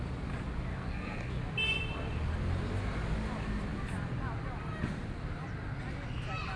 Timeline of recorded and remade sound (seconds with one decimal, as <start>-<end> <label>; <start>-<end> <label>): 0.0-0.7 recorded; 0.7-1.3 remade; 1.3-6.6 recorded